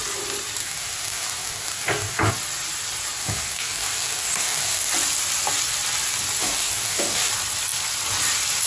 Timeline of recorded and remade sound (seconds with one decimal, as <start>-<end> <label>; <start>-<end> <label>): 0.0-0.6 recorded; 0.6-2.3 remade; 2.3-3.2 recorded; 3.2-4.9 remade; 4.9-6.4 recorded; 6.4-7.3 remade; 7.3-8.7 recorded